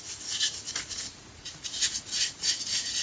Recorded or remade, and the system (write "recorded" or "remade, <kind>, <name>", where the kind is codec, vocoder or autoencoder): remade, vocoder, Vocos